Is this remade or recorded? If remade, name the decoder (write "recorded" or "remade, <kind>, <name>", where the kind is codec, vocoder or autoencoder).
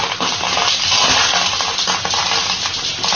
recorded